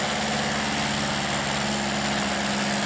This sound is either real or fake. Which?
real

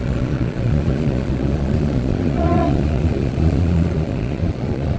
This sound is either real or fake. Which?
fake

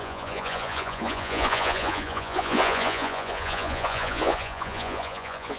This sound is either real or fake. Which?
fake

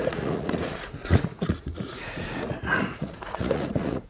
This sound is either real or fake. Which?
fake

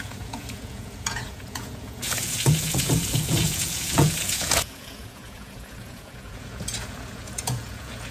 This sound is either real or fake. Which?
fake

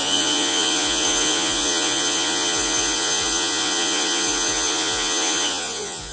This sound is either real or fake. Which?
fake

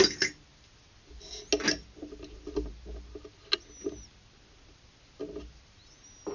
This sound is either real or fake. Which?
real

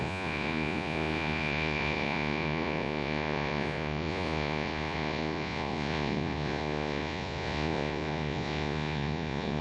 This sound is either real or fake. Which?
fake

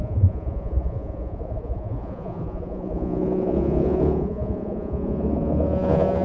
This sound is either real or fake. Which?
fake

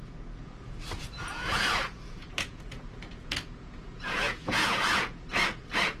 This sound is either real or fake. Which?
fake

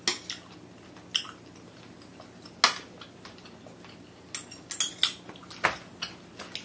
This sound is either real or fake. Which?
real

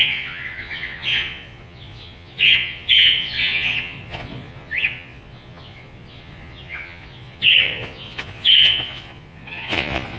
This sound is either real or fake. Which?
fake